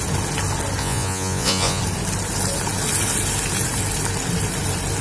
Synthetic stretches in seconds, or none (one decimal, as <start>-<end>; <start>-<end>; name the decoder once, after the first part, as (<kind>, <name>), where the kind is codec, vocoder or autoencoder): 0.8-1.8 (vocoder, Vocos)